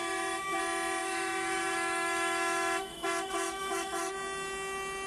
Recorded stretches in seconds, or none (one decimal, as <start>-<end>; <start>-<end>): 0.6-1.0; 4.1-5.1